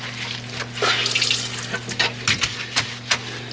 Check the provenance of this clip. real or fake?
real